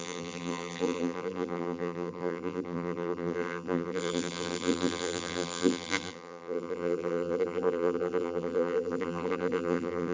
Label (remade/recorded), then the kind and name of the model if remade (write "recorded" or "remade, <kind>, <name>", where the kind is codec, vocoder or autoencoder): remade, vocoder, BigVGAN v2